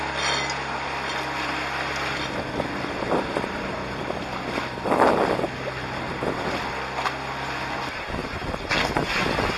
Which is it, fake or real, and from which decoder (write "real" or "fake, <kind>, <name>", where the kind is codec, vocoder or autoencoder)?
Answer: real